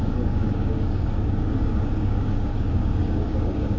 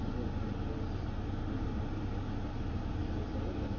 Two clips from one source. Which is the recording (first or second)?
second